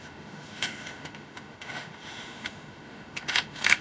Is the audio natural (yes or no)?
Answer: no